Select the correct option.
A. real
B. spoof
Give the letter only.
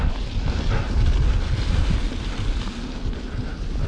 A